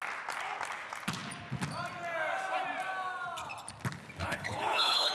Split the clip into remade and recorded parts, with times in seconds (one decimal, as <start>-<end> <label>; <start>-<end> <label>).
0.0-4.2 recorded; 4.2-5.1 remade